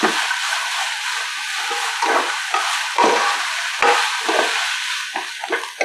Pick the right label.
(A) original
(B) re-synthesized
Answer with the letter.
A